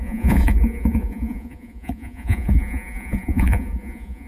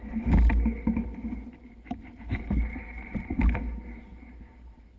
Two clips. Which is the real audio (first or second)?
second